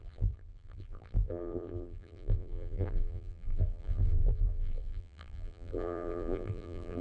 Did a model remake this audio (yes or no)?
yes